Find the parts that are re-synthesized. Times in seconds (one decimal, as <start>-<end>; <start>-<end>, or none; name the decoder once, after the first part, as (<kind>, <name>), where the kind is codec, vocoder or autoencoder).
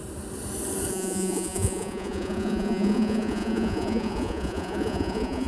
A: 0.9-5.5 (vocoder, Vocos)